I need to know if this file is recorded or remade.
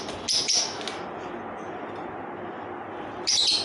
recorded